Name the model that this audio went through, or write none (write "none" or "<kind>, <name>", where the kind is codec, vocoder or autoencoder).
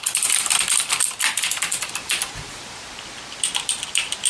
vocoder, BigVGAN v2